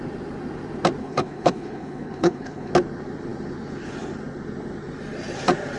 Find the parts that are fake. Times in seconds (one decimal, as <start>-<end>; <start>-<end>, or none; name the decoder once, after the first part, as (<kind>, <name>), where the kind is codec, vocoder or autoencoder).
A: 1.0-2.7 (codec, HILCodec)